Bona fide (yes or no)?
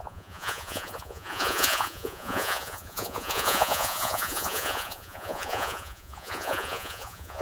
no